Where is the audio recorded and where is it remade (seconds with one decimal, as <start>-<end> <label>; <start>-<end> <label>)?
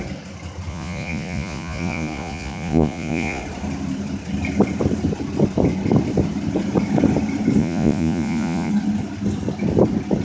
0.0-0.7 recorded; 0.7-3.4 remade; 3.4-7.6 recorded; 7.6-8.7 remade; 8.7-10.2 recorded